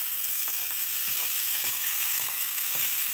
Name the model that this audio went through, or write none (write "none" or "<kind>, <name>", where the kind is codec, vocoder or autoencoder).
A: codec, SNAC